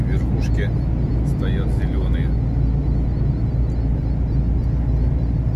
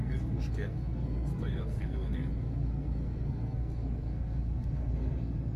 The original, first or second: first